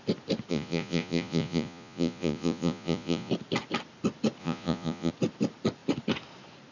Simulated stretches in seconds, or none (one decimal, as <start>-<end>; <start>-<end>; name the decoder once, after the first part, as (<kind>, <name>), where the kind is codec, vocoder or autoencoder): 0.5-3.3 (vocoder, Vocos); 4.4-5.1